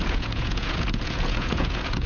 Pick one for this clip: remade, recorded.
remade